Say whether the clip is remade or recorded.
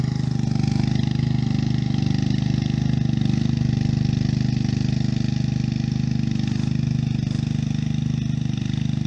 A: recorded